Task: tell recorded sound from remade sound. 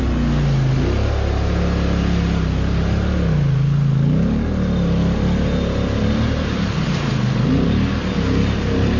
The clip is recorded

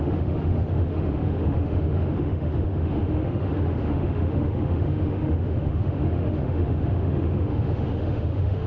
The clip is remade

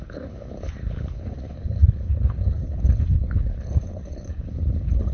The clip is remade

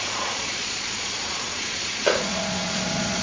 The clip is remade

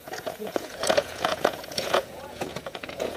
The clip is remade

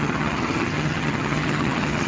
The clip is remade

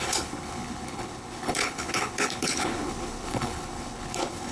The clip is remade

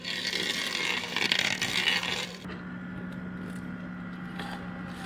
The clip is recorded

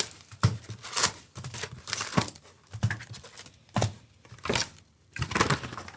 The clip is remade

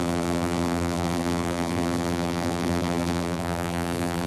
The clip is remade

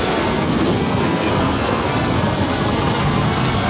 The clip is remade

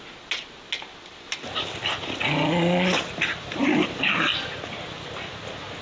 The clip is recorded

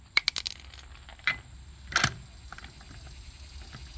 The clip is recorded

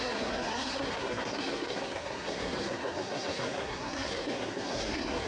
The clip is remade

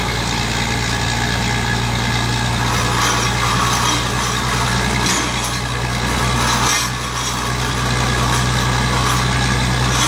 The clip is recorded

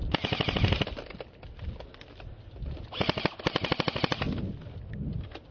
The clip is recorded